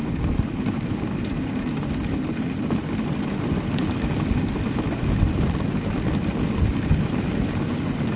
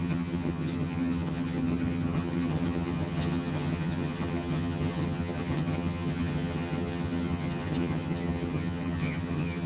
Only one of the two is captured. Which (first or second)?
first